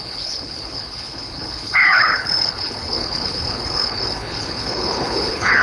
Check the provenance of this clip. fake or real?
fake